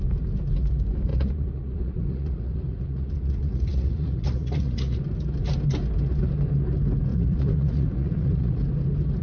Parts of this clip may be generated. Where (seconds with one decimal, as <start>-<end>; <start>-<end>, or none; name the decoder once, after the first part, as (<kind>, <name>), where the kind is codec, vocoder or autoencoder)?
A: 1.1-5.0 (vocoder, Vocos); 7.1-8.6